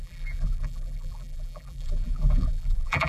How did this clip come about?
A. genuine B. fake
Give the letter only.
B